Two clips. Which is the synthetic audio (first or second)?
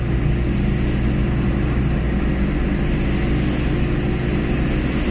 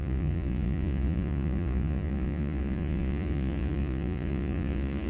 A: second